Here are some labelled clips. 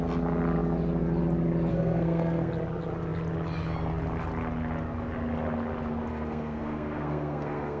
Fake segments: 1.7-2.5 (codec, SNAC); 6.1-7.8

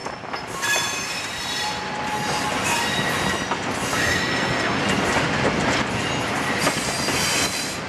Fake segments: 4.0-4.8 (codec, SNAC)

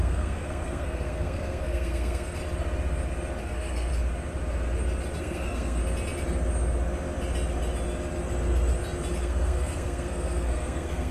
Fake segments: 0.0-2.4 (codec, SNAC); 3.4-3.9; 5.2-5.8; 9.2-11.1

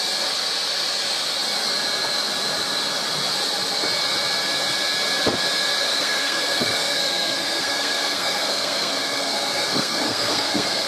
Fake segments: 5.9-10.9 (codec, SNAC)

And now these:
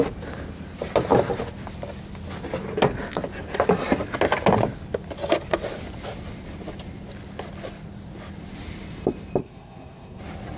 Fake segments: 9.4-10.2 (codec, SNAC)

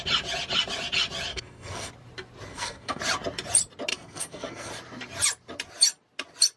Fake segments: 1.3-1.9 (codec, SNAC); 2.5-3.0; 3.9-4.7